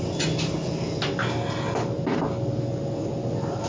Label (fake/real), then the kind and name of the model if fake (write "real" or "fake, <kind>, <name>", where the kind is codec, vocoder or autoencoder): real